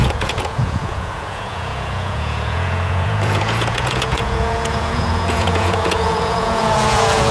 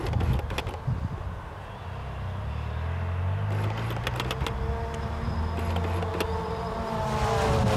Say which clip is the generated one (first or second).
first